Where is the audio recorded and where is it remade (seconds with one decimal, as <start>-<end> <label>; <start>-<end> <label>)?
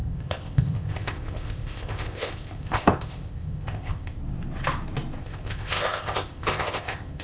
0.0-4.2 remade; 4.2-5.2 recorded; 5.2-7.2 remade